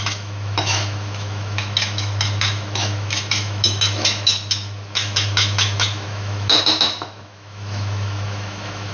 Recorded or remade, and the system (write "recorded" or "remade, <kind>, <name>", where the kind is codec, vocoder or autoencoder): remade, autoencoder, DAC-VAE